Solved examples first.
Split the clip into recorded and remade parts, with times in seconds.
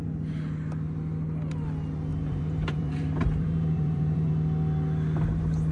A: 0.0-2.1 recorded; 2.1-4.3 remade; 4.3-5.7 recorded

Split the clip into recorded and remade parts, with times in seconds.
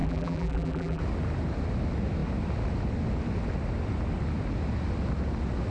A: 0.0-1.0 remade; 1.0-5.7 recorded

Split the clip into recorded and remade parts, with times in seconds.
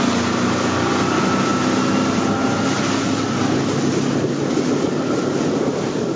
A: 0.0-6.2 recorded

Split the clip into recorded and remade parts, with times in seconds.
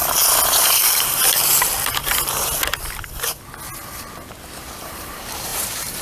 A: 0.0-0.6 recorded; 0.6-1.2 remade; 1.2-4.8 recorded; 4.8-6.0 remade